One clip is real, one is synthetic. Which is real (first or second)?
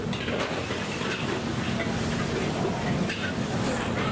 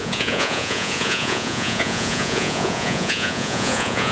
first